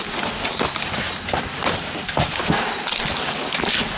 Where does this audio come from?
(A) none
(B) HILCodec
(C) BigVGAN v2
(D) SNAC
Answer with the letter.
A